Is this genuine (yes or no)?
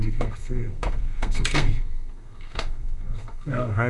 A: no